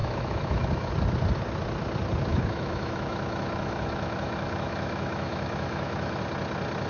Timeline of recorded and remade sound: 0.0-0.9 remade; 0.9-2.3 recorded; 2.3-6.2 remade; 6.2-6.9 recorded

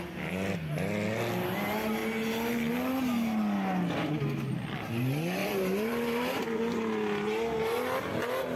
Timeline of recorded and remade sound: 0.0-5.4 recorded; 5.4-6.4 remade; 6.4-8.6 recorded

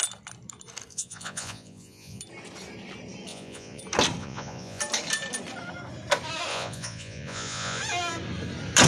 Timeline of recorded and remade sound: 0.0-0.9 recorded; 0.9-2.2 remade; 2.2-3.3 recorded; 3.3-3.8 remade; 3.8-4.2 recorded; 4.2-4.8 remade; 4.8-6.5 recorded; 6.5-7.8 remade; 7.8-8.9 recorded

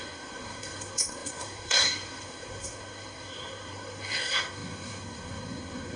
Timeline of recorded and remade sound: 0.0-6.0 remade

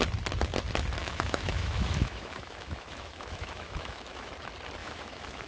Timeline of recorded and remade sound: 0.0-1.0 recorded; 1.0-4.3 remade; 4.3-4.8 recorded; 4.8-5.5 remade

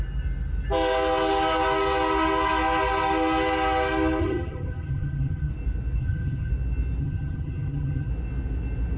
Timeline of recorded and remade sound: 0.0-4.2 recorded; 4.2-5.5 remade; 5.5-6.0 recorded; 6.0-6.5 remade; 6.5-7.0 recorded; 7.0-8.1 remade; 8.1-9.0 recorded

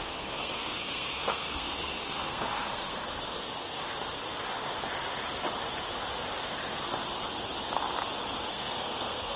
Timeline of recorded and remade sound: 0.0-3.8 remade; 3.8-8.5 recorded; 8.5-9.4 remade

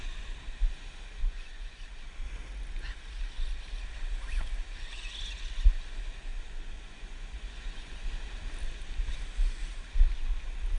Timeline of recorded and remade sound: 0.0-1.2 recorded; 1.2-1.8 remade; 1.8-6.3 recorded; 6.3-8.1 remade; 8.1-10.8 recorded